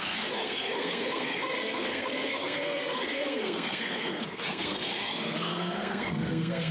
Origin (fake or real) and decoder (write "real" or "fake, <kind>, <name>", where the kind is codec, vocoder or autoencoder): fake, codec, SNAC